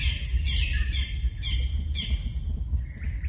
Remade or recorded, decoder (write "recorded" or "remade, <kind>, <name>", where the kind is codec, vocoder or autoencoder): recorded